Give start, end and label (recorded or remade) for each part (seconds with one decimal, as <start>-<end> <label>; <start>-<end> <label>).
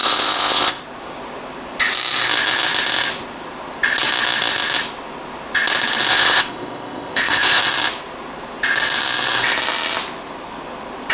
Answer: 0.0-0.8 remade; 0.8-6.1 recorded; 6.1-7.6 remade; 7.6-11.1 recorded